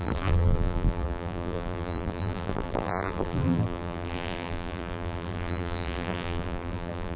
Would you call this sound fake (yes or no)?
yes